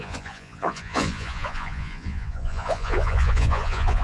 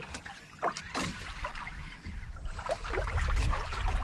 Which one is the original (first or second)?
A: second